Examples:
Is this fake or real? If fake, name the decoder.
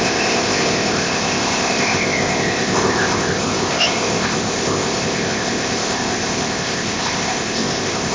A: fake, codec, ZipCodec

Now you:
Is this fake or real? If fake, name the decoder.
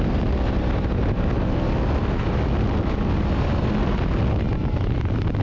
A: real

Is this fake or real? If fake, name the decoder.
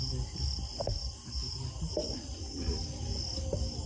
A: real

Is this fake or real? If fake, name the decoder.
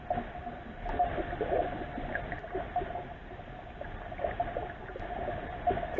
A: real